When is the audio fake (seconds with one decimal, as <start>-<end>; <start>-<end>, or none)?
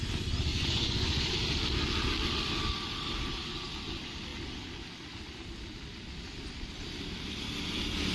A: 0.5-1.3